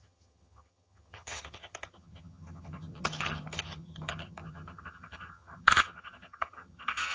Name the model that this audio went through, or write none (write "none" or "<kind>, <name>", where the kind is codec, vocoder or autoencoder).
vocoder, HiFi-GAN